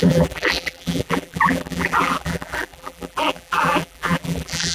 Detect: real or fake fake